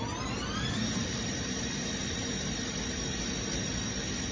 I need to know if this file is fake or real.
real